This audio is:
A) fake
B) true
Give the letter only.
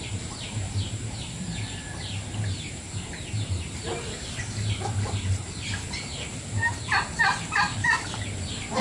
A